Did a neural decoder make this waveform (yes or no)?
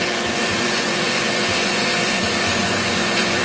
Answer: yes